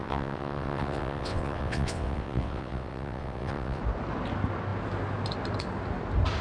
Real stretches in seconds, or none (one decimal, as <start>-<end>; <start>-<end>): 3.8-6.4